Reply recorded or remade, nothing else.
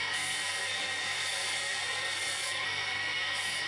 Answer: remade